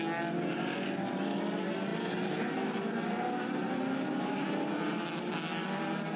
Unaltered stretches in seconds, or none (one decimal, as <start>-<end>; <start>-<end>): 0.0-6.2